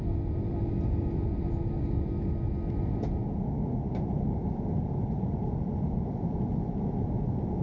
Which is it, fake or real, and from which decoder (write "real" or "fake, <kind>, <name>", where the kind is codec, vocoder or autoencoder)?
real